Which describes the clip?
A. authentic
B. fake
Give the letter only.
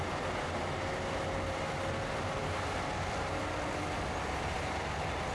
A